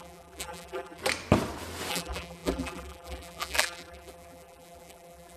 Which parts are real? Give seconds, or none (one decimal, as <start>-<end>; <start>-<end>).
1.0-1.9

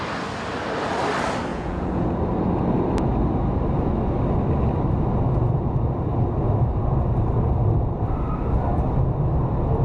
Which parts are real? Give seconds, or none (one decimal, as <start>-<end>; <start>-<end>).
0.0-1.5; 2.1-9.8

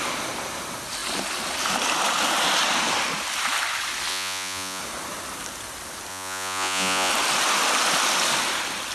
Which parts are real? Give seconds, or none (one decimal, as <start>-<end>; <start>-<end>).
0.0-4.1; 4.8-6.1; 7.1-8.9

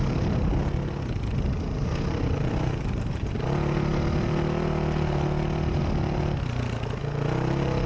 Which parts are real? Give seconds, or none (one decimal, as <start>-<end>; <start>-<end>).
0.0-7.9